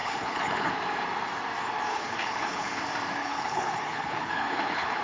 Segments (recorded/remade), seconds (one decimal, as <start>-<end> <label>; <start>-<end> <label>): 0.0-0.7 remade; 0.7-1.9 recorded; 1.9-2.8 remade; 2.8-3.2 recorded; 3.2-5.0 remade